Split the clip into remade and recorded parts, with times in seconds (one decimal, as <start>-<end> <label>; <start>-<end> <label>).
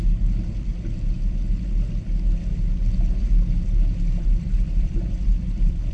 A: 0.0-0.7 remade; 0.7-4.2 recorded; 4.2-5.9 remade